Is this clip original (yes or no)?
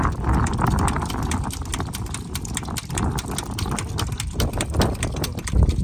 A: yes